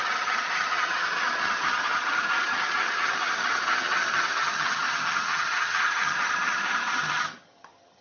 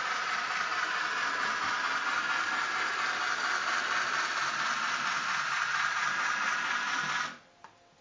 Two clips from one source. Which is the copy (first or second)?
first